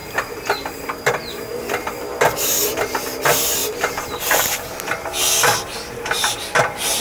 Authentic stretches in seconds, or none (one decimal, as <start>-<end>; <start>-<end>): 0.0-3.6; 4.8-7.0